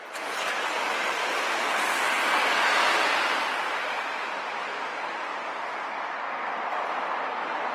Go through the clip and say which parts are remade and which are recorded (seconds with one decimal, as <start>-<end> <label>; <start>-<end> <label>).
0.0-7.7 recorded